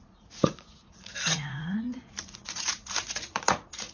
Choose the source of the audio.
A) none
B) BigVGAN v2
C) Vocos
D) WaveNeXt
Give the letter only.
C